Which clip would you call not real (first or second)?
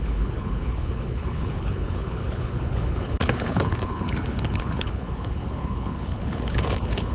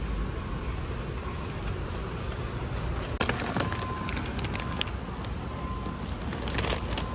first